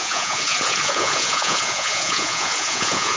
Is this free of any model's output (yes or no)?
no